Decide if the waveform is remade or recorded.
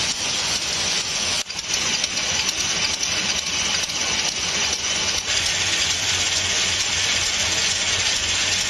remade